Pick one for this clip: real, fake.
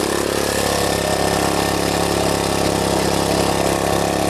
real